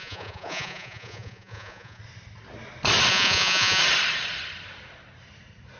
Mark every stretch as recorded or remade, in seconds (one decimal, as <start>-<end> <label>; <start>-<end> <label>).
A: 0.0-2.0 remade; 2.0-3.1 recorded; 3.1-3.8 remade; 3.8-5.8 recorded